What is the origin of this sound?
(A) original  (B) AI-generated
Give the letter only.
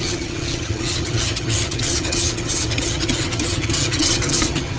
B